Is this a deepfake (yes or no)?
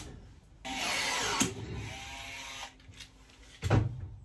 no